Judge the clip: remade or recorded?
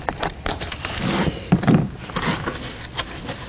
remade